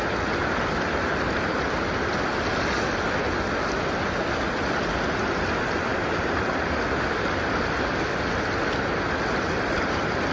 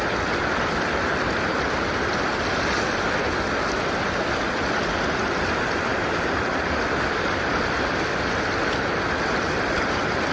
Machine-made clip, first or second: second